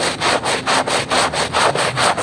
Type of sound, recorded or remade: recorded